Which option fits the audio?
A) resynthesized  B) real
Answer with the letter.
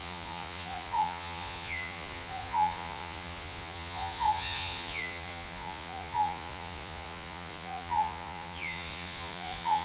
A